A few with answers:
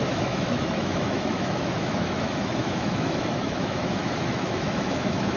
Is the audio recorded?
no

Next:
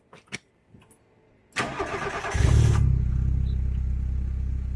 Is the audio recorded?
yes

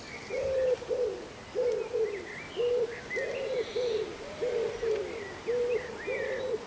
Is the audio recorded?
yes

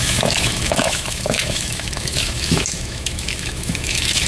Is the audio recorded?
no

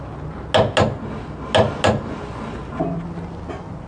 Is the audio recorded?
yes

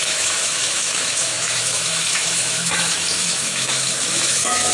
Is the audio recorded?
no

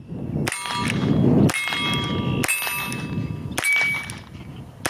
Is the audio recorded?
yes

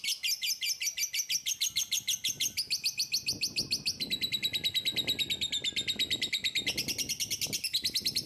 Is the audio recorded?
yes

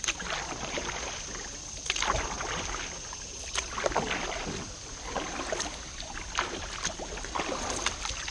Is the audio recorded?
yes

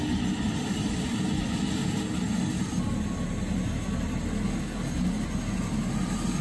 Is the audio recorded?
yes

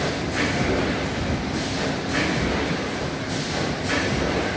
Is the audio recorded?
yes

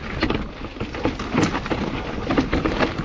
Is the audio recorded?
yes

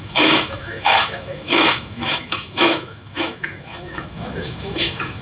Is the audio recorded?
no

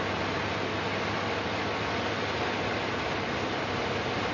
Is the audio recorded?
yes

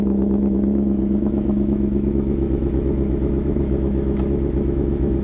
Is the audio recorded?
no